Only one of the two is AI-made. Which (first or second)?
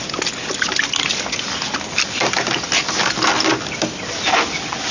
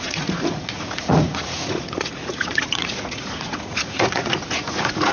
second